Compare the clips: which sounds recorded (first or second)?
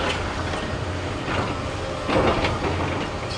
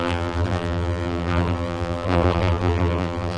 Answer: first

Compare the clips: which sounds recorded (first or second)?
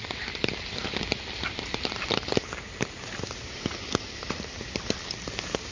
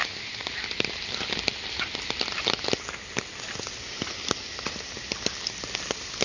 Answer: second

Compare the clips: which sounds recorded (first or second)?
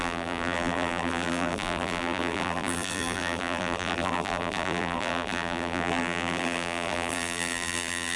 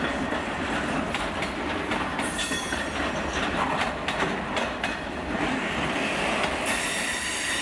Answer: second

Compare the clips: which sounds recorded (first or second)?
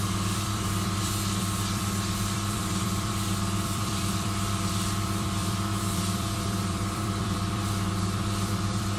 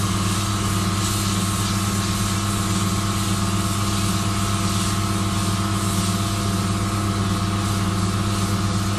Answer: second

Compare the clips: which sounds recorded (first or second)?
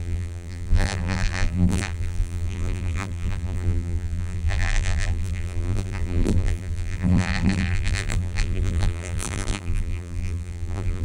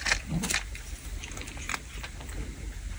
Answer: second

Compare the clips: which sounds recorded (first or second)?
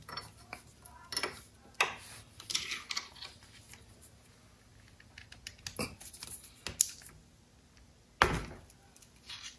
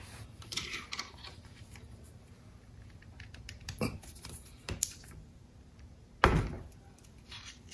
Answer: first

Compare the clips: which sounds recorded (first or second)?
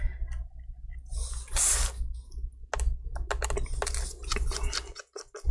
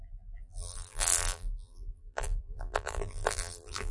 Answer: first